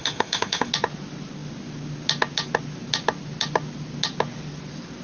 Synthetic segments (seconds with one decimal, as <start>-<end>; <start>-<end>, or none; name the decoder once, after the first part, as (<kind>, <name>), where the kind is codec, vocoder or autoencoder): 0.0-0.7 (autoencoder, DAC-VAE)